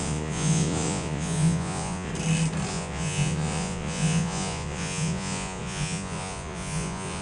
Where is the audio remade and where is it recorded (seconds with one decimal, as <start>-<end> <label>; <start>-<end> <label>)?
0.0-2.1 remade; 2.1-2.7 recorded; 2.7-7.2 remade